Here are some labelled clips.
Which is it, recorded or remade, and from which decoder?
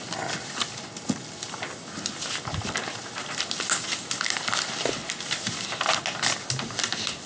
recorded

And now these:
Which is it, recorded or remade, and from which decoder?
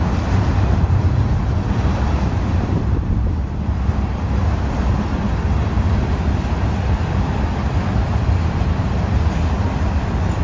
recorded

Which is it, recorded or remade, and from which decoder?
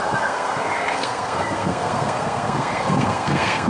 remade, codec, SNAC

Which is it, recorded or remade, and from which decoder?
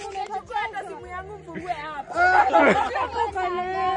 recorded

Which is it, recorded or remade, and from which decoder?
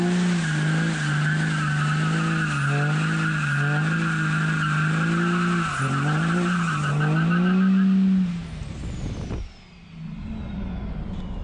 recorded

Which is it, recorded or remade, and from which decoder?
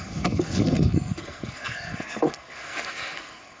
remade, codec, SNAC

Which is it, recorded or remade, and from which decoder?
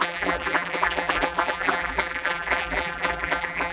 remade, vocoder, BigVGAN v2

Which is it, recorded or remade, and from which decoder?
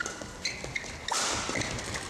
recorded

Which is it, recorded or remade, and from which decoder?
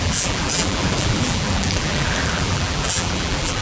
remade, vocoder, BigVGAN v2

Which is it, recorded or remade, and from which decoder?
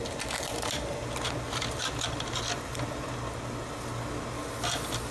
recorded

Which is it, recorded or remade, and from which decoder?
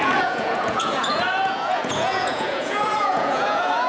remade, vocoder, Vocos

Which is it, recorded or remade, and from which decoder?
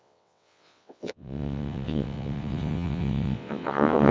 remade, vocoder, WaveNeXt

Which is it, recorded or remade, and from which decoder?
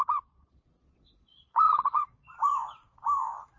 remade, vocoder, Vocos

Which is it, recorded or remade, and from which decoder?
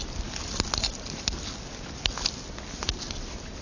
recorded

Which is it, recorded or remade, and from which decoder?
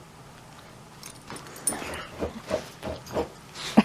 recorded